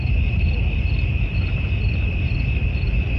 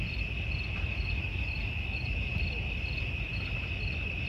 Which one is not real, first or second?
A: first